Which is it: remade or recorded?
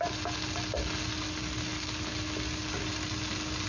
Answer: recorded